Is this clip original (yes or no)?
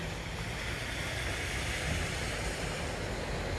yes